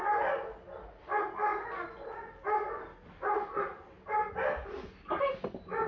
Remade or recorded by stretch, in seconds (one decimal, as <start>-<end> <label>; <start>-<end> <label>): 0.0-5.9 recorded